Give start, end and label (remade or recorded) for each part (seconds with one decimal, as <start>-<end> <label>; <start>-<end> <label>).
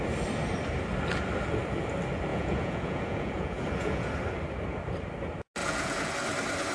0.0-2.3 recorded; 2.3-4.1 remade; 4.1-5.6 recorded; 5.6-6.1 remade; 6.1-6.7 recorded